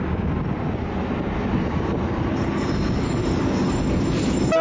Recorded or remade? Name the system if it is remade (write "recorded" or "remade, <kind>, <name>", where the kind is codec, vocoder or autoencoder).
recorded